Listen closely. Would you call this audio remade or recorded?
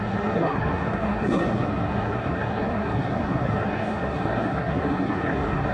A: remade